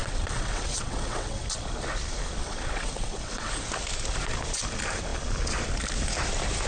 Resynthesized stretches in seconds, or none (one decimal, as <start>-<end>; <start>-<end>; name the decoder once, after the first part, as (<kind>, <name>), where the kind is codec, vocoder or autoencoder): 0.0-1.4 (vocoder, WaveNeXt); 2.4-3.5